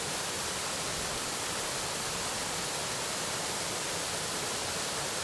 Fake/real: real